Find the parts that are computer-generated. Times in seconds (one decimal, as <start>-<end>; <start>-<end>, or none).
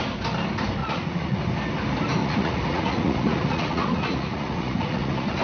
0.8-1.4; 2.2-5.4